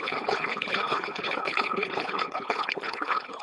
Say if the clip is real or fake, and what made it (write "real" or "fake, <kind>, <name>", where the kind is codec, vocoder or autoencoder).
fake, codec, HILCodec